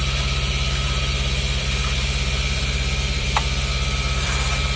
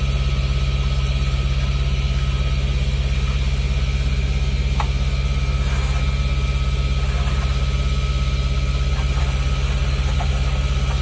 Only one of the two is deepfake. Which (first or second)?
first